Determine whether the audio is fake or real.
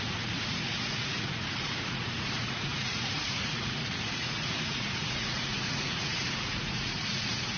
fake